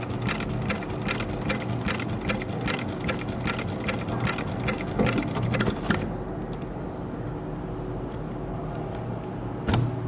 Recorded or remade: recorded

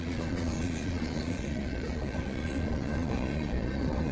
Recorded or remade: remade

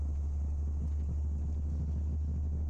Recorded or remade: recorded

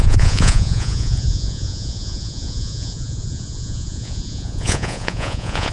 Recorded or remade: remade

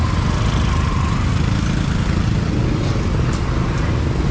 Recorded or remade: recorded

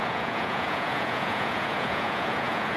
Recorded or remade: remade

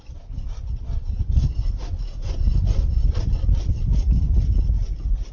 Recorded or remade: recorded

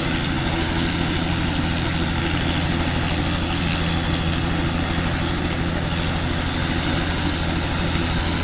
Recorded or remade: recorded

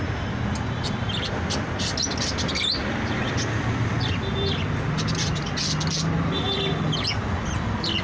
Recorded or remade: recorded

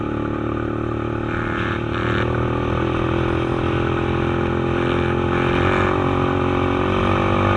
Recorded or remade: recorded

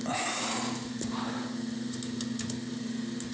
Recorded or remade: recorded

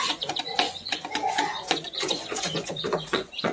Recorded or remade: remade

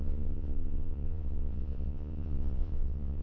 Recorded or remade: remade